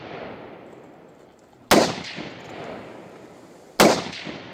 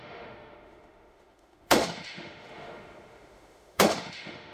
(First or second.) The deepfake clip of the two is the second